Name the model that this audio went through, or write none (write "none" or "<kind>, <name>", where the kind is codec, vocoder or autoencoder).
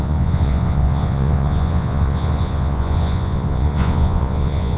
vocoder, Vocos